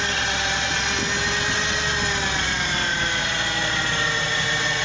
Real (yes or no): yes